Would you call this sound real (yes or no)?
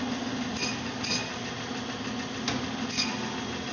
yes